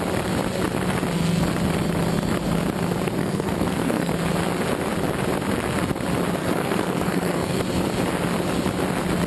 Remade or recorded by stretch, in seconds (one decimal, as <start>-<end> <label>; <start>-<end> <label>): 0.0-3.2 recorded; 3.2-4.1 remade; 4.1-6.4 recorded; 6.4-7.6 remade; 7.6-9.3 recorded

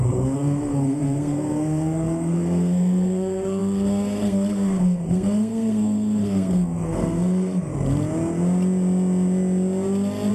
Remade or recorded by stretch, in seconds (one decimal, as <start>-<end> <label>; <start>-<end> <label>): 0.0-7.7 remade; 7.7-10.3 recorded

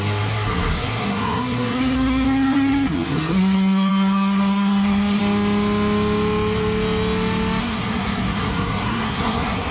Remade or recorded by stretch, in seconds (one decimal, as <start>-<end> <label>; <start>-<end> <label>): 0.0-5.2 remade; 5.2-7.6 recorded; 7.6-9.7 remade

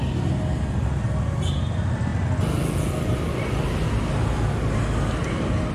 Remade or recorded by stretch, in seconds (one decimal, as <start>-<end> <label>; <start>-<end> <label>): 0.0-5.7 recorded

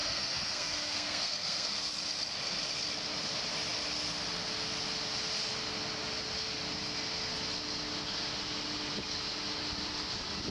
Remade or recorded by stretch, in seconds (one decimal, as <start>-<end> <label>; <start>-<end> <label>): 0.0-1.9 remade; 1.9-10.5 recorded